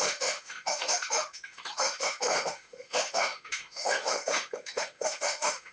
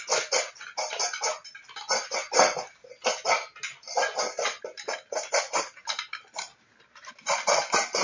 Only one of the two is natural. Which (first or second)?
second